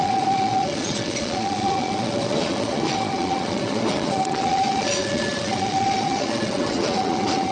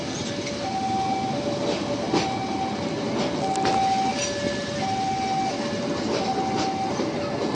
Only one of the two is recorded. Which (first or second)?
second